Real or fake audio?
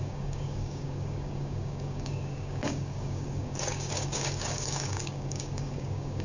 fake